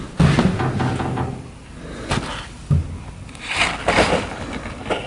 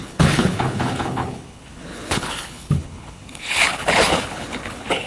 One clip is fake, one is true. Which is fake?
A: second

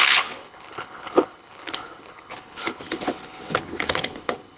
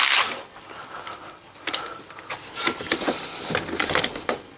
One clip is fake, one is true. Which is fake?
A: first